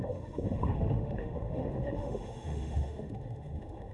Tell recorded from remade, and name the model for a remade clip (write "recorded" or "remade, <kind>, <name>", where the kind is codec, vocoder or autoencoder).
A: remade, autoencoder, DAC-VAE